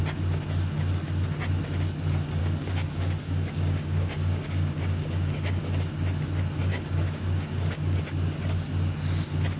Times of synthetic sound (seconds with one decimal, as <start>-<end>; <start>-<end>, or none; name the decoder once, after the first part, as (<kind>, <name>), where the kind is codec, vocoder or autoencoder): 2.4-5.6 (codec, DAC); 6.7-8.0